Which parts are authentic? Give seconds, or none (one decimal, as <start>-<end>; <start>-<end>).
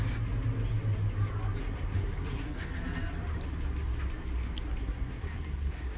0.0-1.6; 2.7-4.8